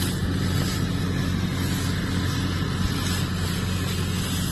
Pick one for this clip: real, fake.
real